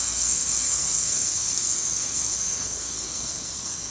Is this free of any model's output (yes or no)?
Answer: no